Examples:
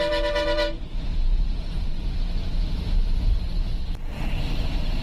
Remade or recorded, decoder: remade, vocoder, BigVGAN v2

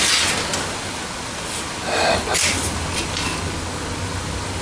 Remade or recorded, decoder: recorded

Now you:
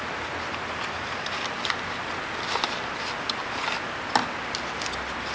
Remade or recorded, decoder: recorded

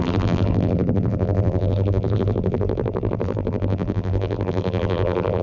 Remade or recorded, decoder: remade, vocoder, BigVGAN v2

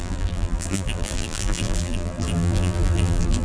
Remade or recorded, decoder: remade, vocoder, BigVGAN v2